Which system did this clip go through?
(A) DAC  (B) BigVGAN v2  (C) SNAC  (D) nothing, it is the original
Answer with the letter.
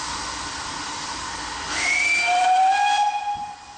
D